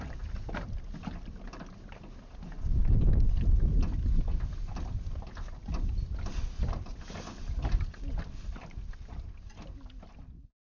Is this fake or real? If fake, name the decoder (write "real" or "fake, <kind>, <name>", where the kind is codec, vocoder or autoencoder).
real